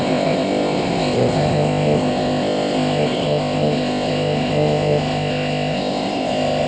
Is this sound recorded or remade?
remade